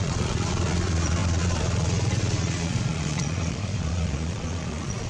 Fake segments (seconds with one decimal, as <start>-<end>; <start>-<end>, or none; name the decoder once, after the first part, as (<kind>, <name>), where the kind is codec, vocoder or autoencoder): 0.0-5.1 (vocoder, Vocos)